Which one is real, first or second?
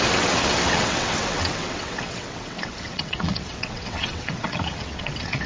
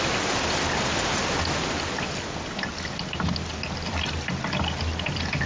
second